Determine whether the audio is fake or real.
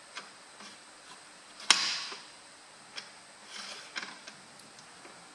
real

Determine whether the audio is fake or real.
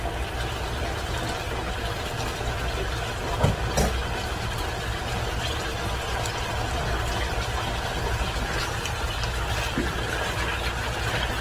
real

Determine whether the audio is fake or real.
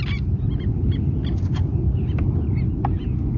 real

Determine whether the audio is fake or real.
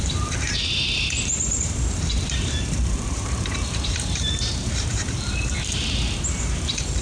fake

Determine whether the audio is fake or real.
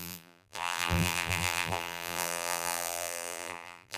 fake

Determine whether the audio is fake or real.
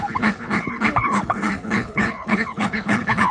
fake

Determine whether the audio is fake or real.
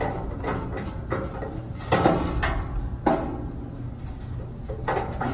real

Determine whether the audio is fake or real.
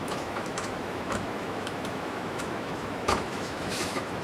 fake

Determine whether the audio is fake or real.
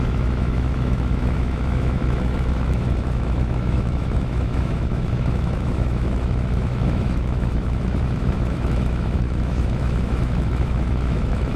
fake